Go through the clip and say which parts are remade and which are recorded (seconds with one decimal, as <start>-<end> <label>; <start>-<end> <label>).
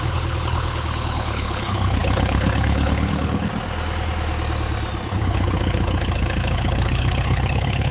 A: 0.0-3.5 remade; 3.5-5.1 recorded; 5.1-7.9 remade